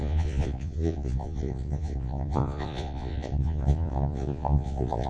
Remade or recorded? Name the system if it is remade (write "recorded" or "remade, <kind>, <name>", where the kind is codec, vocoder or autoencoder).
remade, vocoder, Vocos